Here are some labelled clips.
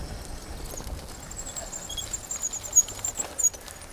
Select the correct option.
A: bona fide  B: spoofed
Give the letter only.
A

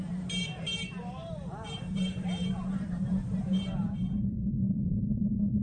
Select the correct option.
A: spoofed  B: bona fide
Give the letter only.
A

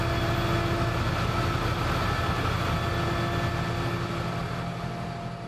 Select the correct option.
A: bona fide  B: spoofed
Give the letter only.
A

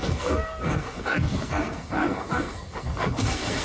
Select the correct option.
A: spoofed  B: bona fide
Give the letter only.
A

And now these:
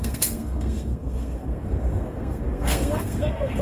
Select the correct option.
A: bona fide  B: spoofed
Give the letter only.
B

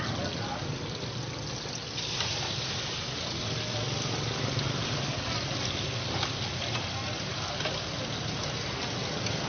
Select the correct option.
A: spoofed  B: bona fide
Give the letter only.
B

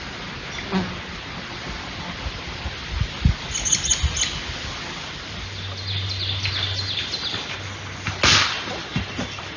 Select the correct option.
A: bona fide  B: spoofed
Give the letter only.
A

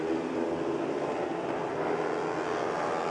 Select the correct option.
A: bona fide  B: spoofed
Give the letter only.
A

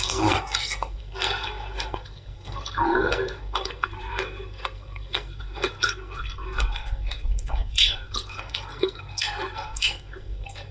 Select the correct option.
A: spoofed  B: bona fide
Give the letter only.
A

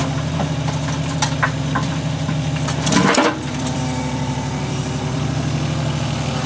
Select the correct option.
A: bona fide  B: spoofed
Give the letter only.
B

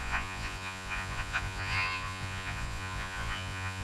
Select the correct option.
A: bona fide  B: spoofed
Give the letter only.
B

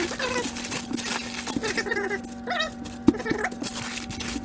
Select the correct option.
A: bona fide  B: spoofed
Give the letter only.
A